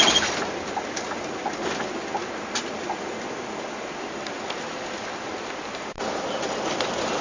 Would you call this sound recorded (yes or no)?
yes